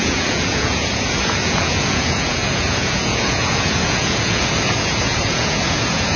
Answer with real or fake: fake